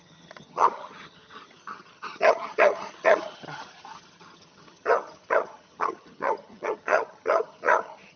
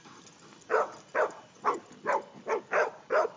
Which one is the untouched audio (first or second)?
second